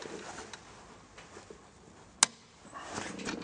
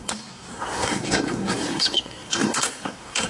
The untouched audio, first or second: first